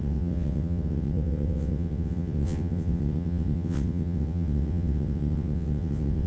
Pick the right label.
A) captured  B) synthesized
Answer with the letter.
B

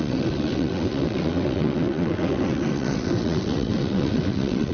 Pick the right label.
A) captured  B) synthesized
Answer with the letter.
B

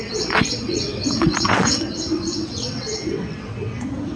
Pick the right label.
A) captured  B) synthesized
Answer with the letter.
B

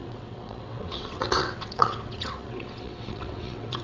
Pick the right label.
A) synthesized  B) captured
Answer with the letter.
A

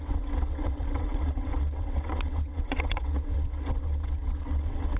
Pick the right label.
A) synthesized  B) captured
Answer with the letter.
A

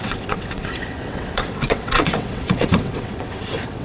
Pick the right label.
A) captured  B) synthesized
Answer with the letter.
B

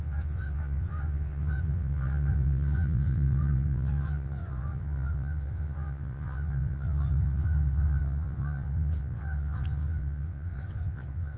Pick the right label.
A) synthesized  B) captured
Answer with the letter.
A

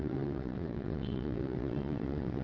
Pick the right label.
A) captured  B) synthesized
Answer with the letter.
B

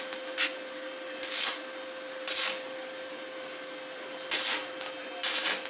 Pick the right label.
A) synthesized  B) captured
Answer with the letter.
B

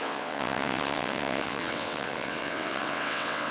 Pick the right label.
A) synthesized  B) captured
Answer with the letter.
A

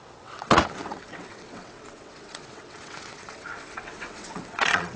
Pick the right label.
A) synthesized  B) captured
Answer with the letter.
A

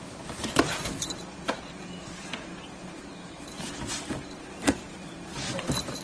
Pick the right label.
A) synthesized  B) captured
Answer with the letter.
B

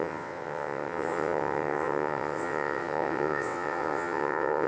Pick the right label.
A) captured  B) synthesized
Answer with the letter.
B